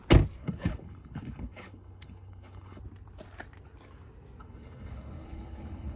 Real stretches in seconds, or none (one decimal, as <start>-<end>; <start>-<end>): 0.0-0.4; 2.8-4.4